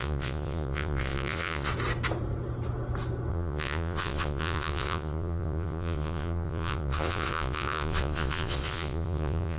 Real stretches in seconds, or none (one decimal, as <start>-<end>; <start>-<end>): 1.7-3.3